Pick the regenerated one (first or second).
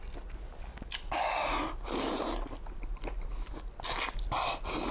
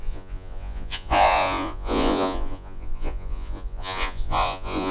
second